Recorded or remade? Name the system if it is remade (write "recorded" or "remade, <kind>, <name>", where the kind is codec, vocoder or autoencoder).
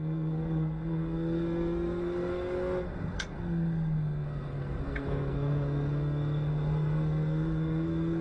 remade, codec, SNAC